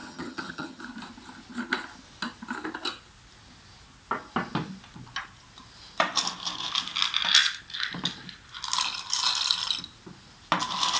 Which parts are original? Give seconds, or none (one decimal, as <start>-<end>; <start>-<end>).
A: 0.8-11.0